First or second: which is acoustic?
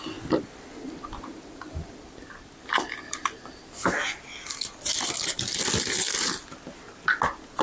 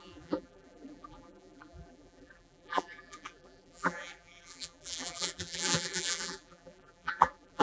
first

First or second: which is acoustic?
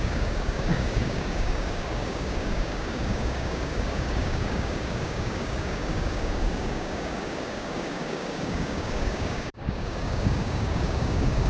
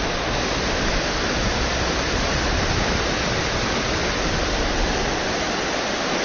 second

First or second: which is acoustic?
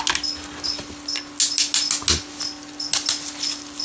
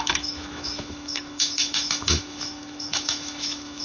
first